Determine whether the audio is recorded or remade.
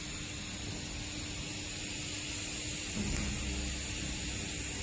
recorded